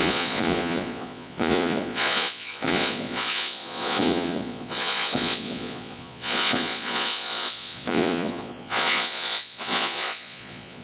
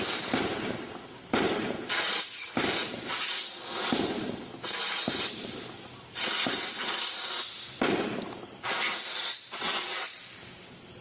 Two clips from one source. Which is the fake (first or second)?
first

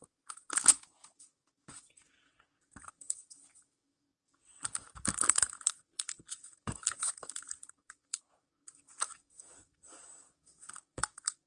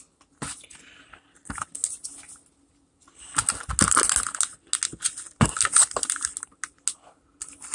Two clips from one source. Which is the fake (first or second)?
first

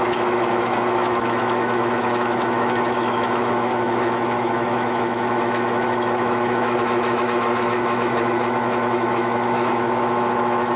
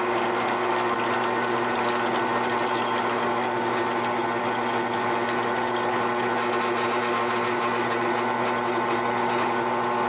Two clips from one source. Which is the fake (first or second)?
first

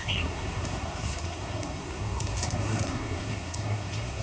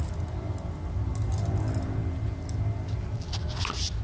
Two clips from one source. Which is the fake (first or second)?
first